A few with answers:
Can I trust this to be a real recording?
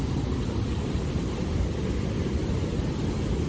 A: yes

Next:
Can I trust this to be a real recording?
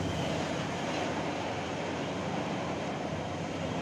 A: no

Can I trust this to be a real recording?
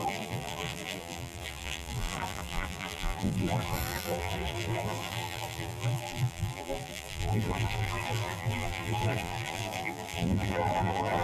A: no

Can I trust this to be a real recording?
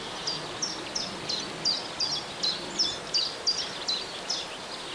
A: yes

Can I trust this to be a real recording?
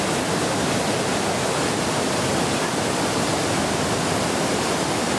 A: yes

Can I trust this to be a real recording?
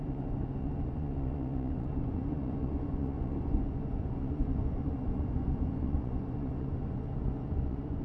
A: no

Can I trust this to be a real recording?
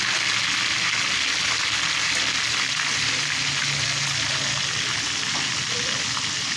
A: yes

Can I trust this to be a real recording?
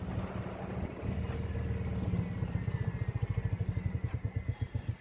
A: yes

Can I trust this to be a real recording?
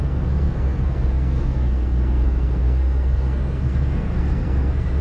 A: no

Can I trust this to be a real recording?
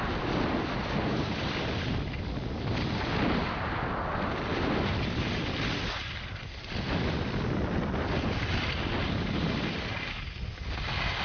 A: yes